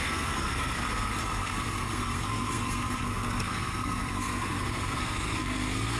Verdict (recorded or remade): remade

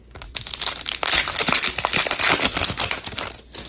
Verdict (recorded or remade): recorded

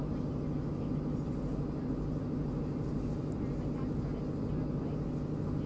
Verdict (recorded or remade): recorded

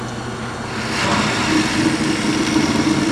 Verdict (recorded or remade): recorded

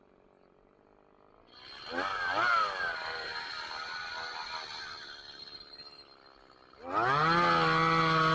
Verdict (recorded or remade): recorded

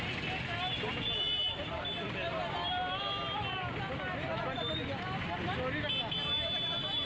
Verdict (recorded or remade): recorded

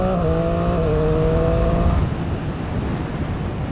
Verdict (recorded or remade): recorded